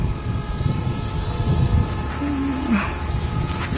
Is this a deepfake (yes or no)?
no